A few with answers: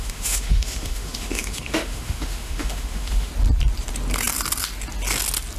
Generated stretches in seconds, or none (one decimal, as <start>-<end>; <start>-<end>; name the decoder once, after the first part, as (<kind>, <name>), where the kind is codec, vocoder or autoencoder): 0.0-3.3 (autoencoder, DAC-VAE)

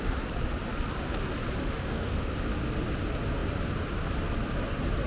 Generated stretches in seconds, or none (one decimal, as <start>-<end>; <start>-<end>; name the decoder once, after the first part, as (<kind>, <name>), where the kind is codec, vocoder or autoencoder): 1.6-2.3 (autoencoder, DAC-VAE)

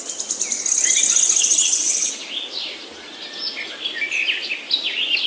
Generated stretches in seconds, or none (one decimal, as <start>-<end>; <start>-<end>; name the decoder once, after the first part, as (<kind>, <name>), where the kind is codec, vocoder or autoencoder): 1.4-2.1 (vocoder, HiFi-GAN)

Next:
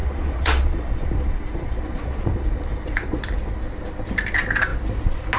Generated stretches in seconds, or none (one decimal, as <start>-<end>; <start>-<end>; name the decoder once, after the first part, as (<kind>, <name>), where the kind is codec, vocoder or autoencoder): 0.0-3.2 (vocoder, Vocos)